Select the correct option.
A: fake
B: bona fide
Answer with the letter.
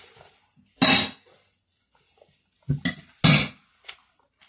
B